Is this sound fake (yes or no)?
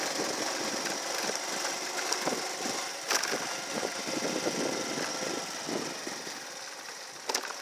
no